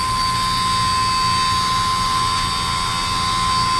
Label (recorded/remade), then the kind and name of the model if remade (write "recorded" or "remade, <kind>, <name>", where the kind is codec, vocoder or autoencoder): recorded